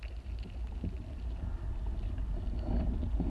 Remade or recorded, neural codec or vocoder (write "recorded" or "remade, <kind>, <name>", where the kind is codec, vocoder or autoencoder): recorded